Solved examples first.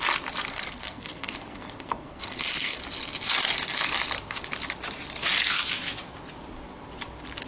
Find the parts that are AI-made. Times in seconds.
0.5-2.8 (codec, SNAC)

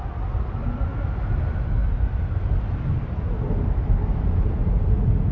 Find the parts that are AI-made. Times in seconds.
none